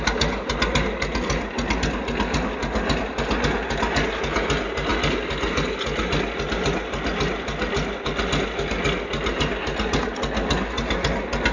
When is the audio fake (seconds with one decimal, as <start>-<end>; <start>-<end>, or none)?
none